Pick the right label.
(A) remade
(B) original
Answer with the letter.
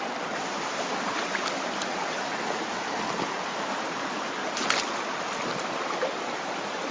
B